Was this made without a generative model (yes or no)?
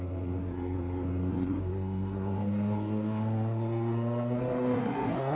no